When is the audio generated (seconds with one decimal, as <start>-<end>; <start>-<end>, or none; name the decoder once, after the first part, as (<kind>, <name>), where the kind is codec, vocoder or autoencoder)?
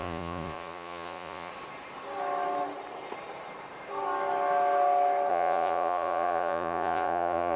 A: 0.0-1.5 (vocoder, Vocos); 5.3-7.6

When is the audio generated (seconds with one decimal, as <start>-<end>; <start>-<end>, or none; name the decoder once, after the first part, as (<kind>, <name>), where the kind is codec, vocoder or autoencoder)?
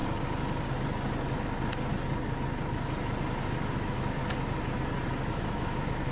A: 3.7-4.2 (autoencoder, DAC-VAE); 5.3-6.1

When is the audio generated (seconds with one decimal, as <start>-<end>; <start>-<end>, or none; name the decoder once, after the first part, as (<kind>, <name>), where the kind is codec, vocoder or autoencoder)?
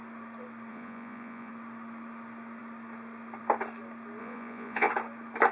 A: 0.7-1.5 (vocoder, Vocos); 4.2-4.9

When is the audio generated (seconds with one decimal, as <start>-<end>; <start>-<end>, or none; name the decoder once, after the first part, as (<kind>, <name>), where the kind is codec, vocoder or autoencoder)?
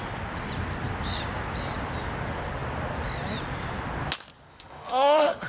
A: 4.5-5.5 (autoencoder, DAC-VAE)